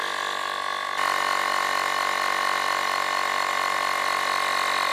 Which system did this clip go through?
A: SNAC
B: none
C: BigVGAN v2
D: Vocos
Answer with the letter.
B